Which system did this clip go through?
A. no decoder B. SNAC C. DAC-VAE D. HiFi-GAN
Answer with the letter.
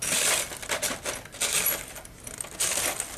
A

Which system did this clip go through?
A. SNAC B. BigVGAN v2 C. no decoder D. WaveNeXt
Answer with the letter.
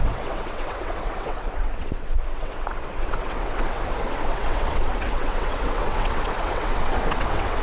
D